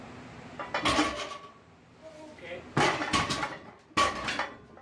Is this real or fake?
real